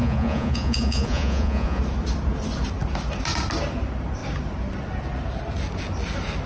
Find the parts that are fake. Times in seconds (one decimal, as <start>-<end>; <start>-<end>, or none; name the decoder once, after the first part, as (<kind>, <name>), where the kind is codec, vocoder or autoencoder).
0.0-1.8 (vocoder, Vocos)